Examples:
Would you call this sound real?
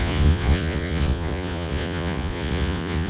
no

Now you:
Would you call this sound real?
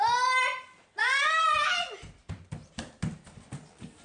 yes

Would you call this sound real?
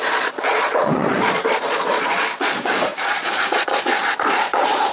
no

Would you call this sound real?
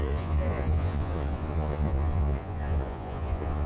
no